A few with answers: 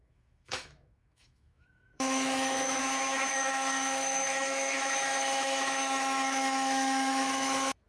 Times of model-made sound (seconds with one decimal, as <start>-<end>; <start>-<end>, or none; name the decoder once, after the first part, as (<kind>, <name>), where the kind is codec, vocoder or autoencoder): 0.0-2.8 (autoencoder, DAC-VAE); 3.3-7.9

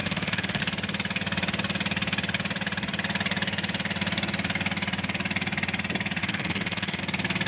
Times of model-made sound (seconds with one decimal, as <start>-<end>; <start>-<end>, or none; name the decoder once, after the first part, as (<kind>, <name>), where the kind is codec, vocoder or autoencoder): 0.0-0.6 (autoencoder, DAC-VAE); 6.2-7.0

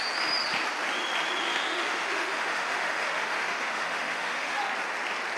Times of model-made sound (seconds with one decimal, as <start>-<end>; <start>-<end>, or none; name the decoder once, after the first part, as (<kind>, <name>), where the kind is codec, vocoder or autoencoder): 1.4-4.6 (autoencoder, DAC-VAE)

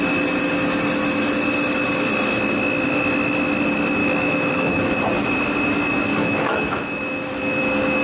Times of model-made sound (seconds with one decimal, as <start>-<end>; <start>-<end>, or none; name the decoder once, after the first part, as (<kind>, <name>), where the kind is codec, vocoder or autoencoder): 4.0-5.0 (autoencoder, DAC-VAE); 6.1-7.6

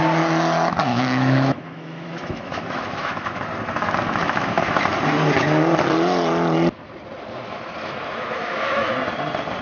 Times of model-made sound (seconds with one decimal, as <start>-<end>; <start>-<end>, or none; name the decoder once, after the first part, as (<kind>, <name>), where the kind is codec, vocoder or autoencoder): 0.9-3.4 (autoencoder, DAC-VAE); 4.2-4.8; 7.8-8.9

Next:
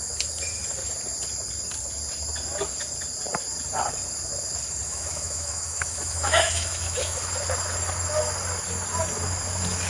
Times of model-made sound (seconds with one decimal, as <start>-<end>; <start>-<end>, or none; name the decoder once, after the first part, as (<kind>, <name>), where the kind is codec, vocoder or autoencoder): 4.9-7.3 (autoencoder, DAC-VAE)

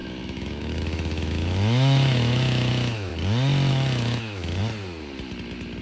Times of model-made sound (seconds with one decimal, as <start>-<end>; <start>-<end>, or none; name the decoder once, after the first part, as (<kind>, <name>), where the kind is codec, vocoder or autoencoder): 0.0-3.1 (autoencoder, DAC-VAE); 3.7-4.6